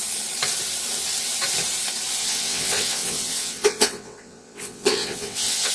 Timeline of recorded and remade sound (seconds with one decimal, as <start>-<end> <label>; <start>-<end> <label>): 0.0-2.2 recorded; 2.2-5.7 remade